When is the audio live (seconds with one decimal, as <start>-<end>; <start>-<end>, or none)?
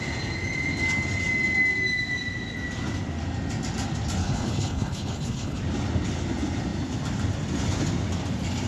0.0-4.2; 5.6-8.7